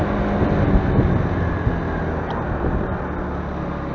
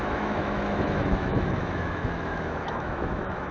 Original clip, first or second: first